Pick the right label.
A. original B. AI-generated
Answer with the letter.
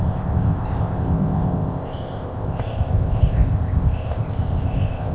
B